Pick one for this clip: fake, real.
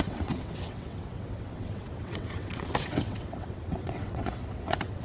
fake